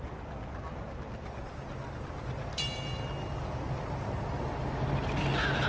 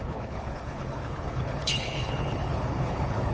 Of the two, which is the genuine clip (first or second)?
first